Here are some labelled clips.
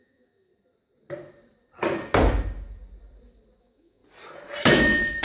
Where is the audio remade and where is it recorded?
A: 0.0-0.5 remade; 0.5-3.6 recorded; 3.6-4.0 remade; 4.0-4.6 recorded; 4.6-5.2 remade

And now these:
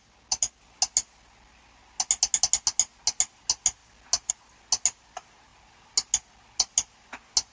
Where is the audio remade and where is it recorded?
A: 0.0-7.5 recorded

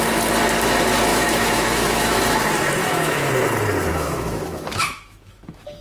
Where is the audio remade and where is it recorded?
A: 0.0-1.1 recorded; 1.1-2.2 remade; 2.2-2.8 recorded; 2.8-3.3 remade; 3.3-3.9 recorded; 3.9-5.8 remade

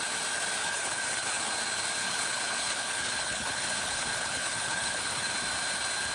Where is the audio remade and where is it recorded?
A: 0.0-0.6 recorded; 0.6-1.5 remade; 1.5-2.0 recorded; 2.0-5.3 remade; 5.3-6.1 recorded

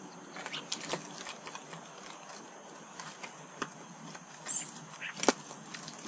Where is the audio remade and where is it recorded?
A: 0.0-6.1 recorded

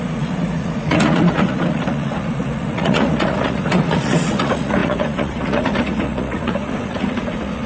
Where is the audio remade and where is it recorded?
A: 0.0-7.7 remade

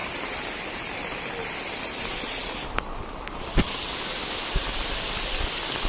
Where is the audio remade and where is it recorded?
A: 0.0-5.9 remade